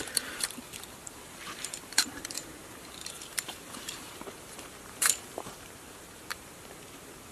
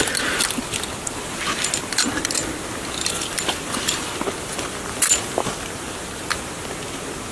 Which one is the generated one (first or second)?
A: first